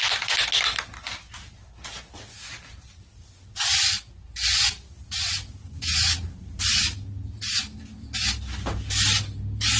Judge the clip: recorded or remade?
recorded